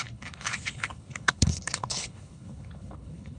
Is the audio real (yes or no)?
no